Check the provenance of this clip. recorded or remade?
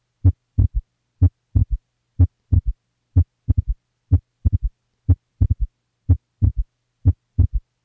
recorded